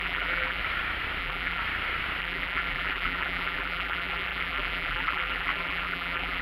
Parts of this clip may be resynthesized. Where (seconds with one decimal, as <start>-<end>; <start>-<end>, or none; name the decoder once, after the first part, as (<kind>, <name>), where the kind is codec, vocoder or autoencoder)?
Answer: 0.0-0.6 (vocoder, BigVGAN v2); 1.2-1.6; 2.2-6.4